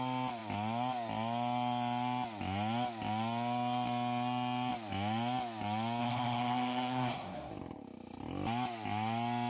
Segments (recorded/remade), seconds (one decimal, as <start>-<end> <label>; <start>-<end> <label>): 0.0-6.0 recorded; 6.0-7.5 remade; 7.5-9.5 recorded